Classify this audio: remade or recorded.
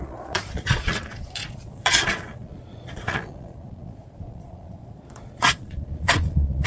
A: remade